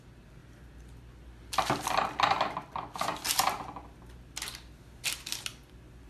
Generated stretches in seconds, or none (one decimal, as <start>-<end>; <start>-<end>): none